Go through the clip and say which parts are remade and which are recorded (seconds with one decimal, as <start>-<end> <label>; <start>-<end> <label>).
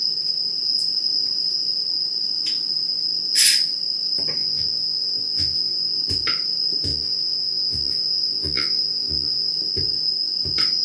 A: 0.0-4.4 recorded; 4.4-6.0 remade; 6.0-6.9 recorded; 6.9-9.5 remade; 9.5-10.8 recorded